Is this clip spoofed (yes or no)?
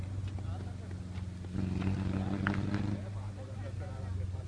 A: no